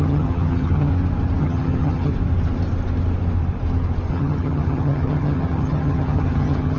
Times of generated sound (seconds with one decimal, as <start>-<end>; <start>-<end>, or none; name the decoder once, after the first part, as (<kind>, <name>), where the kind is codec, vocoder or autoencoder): 0.0-0.9 (vocoder, HiFi-GAN); 1.4-2.1; 4.1-6.8

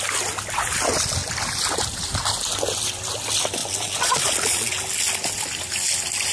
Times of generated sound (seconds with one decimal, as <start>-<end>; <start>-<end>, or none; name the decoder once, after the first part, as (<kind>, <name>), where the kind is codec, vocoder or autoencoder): 3.6-4.7 (vocoder, Vocos)